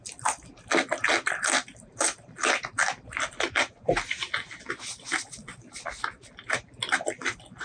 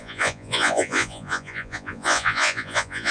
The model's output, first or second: second